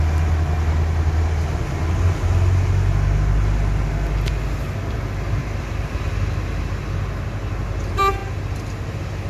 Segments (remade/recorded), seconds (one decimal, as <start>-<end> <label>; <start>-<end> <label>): 0.0-5.4 recorded; 5.4-6.0 remade; 6.0-9.3 recorded